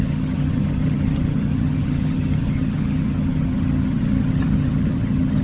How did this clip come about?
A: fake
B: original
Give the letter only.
A